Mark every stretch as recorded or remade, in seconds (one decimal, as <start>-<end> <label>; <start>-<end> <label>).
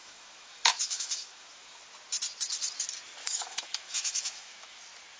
0.0-1.8 remade; 1.8-3.2 recorded; 3.2-4.8 remade; 4.8-5.2 recorded